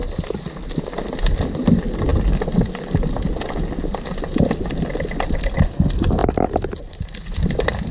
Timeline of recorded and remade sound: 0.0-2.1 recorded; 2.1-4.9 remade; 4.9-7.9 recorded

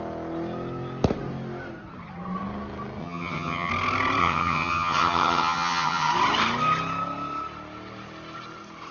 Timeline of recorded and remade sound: 0.0-3.0 recorded; 3.0-3.7 remade; 3.7-4.2 recorded; 4.2-6.1 remade; 6.1-8.9 recorded

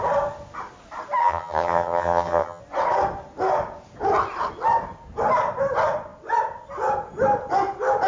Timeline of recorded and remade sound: 0.0-1.2 recorded; 1.2-2.6 remade; 2.6-8.1 recorded